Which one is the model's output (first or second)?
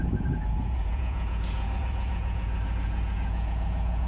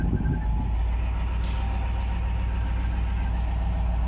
first